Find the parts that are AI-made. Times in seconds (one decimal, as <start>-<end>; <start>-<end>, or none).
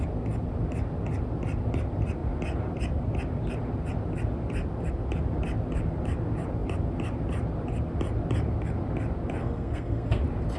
9.4-10.2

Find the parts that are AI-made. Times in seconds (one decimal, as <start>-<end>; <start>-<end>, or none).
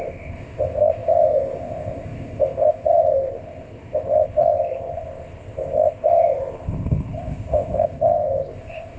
0.0-9.0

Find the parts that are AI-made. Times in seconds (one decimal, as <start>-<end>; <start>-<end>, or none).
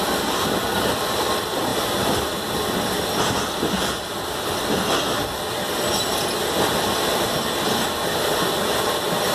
none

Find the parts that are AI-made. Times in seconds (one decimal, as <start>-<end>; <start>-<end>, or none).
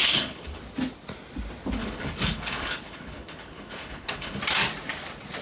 0.0-0.6; 1.8-4.4